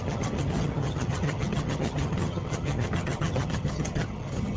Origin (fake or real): fake